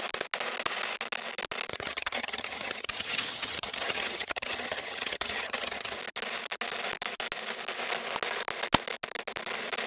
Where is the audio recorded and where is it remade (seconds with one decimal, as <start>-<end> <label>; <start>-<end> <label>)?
0.0-1.7 recorded; 1.7-6.0 remade; 6.0-9.9 recorded